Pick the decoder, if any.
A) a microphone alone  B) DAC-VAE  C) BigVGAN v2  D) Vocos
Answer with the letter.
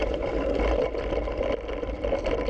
A